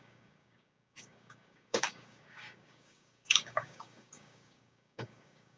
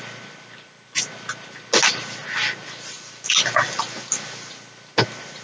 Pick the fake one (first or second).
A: first